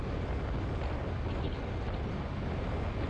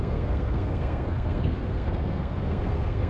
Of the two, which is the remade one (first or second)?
second